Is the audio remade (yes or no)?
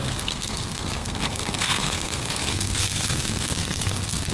yes